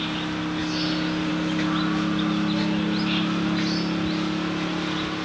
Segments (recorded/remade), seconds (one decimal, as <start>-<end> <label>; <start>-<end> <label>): 0.0-5.2 recorded